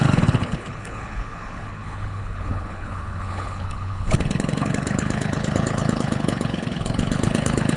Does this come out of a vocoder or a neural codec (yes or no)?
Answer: yes